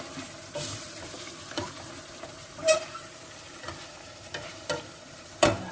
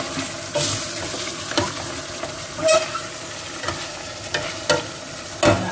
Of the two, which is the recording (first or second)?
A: second